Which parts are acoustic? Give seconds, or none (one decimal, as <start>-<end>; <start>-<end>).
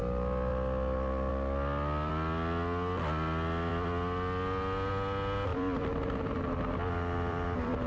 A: 0.5-1.3; 2.1-5.5